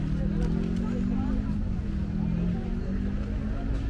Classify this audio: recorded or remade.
recorded